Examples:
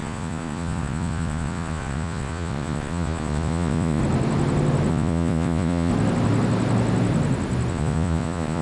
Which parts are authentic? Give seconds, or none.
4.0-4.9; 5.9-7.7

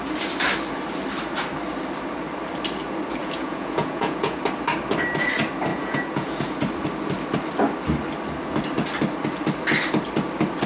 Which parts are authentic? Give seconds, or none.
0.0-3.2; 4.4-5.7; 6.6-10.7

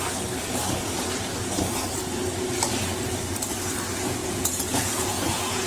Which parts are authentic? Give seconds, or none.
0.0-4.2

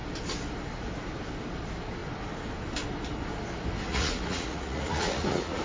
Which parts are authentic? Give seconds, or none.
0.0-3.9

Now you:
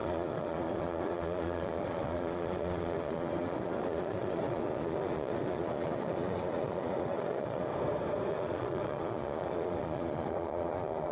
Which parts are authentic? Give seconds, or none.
7.7-8.3